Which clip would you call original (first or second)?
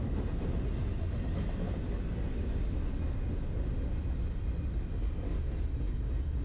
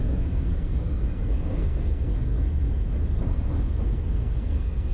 first